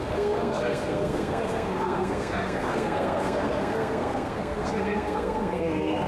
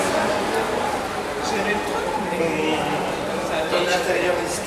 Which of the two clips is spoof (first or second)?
first